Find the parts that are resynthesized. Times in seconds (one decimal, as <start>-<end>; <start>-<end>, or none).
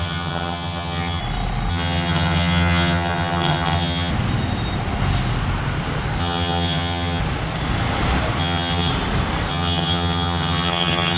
0.0-1.2; 1.7-4.1; 6.2-7.2; 8.4-8.9; 9.5-11.2